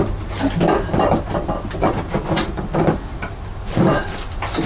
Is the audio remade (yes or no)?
no